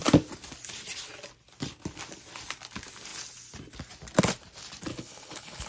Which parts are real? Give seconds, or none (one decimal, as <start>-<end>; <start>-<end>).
0.0-4.9

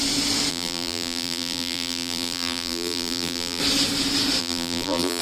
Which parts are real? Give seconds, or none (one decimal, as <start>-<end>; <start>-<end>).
0.0-0.5; 3.6-4.4

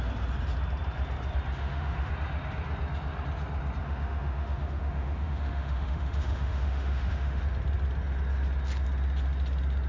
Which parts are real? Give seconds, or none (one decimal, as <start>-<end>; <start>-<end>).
0.0-1.6; 2.1-3.8; 7.4-9.9

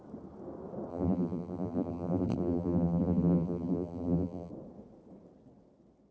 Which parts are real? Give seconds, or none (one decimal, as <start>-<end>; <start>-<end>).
0.0-0.9; 4.5-6.1

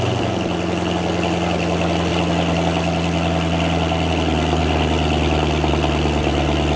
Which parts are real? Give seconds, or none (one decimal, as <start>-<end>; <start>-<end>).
0.0-6.8

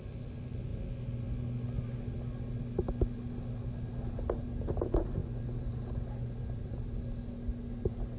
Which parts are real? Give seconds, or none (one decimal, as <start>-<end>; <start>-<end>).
0.0-8.2

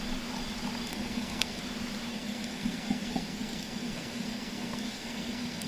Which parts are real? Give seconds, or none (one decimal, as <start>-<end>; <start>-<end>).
0.0-0.9; 1.6-2.1

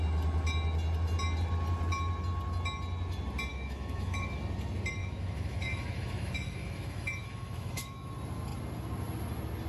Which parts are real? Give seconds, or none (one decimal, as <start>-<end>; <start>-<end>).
0.0-3.5; 4.4-5.0; 8.1-9.7